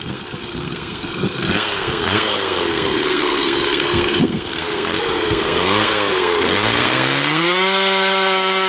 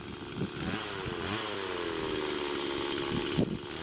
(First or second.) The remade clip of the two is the first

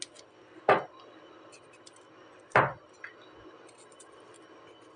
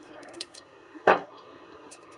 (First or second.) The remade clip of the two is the second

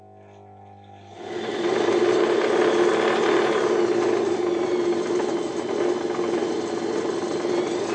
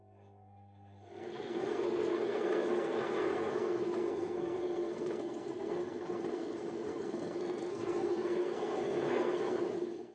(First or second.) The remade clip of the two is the second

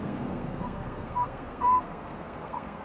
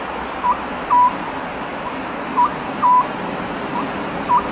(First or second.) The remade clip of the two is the first